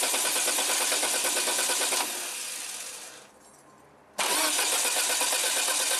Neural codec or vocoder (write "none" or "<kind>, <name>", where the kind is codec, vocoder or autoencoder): none